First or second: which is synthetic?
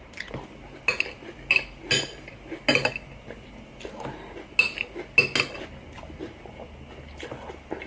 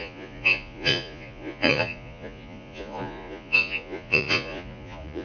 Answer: second